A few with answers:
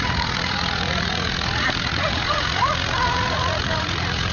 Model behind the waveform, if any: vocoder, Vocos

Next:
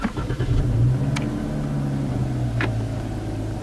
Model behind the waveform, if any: none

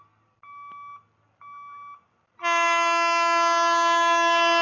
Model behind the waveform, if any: none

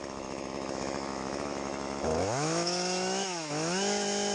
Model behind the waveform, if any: autoencoder, DAC-VAE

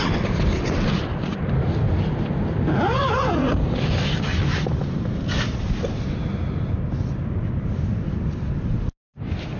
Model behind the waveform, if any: none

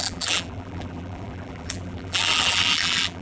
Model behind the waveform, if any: vocoder, BigVGAN v2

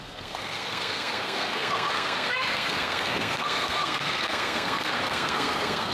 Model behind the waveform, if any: codec, SNAC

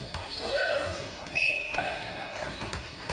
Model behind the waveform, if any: codec, SNAC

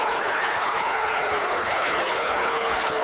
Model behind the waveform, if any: codec, HILCodec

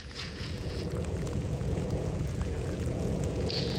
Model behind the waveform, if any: vocoder, Vocos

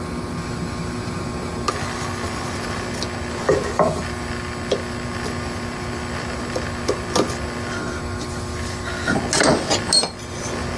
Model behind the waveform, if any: none